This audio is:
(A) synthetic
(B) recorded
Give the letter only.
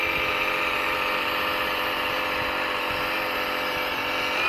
B